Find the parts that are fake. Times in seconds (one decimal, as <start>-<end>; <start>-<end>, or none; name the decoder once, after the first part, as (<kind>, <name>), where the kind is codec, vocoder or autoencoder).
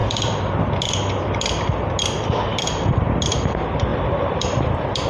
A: 2.5-3.5 (vocoder, BigVGAN v2); 3.9-4.6